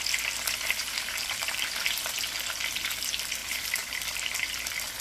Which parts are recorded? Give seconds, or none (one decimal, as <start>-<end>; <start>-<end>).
0.0-0.8; 1.6-3.4; 3.9-5.0